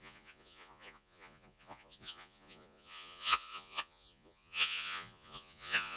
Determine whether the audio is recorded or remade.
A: remade